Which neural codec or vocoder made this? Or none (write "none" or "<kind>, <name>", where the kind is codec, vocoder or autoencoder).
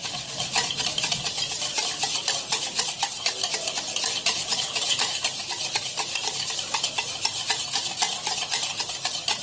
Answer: none